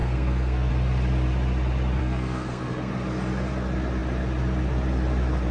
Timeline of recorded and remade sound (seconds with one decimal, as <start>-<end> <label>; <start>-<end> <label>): 0.0-0.7 remade; 0.7-2.0 recorded; 2.0-2.9 remade; 2.9-5.5 recorded